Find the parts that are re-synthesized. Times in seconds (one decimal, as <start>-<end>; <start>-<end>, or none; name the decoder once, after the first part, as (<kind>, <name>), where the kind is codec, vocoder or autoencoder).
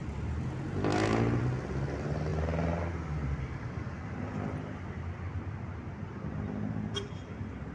none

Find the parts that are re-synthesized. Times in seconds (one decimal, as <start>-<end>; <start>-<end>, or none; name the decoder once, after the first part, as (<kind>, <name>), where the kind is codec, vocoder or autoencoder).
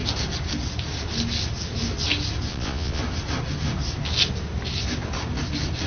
2.5-3.0 (vocoder, Vocos)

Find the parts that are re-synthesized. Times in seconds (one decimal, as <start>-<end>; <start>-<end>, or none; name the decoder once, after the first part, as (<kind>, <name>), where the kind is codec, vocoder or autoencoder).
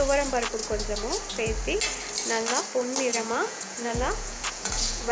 3.1-5.1 (vocoder, Vocos)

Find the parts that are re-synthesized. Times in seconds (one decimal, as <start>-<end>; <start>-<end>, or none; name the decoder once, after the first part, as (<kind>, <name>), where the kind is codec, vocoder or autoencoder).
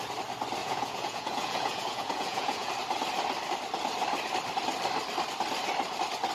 0.6-2.7 (vocoder, Vocos)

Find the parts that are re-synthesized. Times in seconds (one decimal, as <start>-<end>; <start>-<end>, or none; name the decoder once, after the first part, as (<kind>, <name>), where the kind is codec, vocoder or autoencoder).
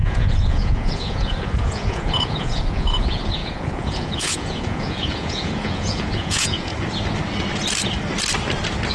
0.0-6.7 (vocoder, Vocos)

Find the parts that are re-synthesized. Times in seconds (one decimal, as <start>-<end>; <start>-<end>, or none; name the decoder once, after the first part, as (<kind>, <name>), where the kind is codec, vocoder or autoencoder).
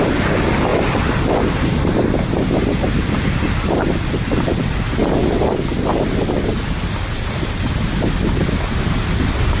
none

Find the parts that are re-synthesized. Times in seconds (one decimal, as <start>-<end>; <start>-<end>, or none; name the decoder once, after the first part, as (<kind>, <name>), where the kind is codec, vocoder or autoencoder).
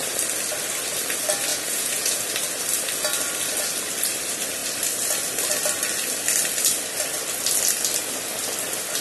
1.5-2.2 (vocoder, Vocos)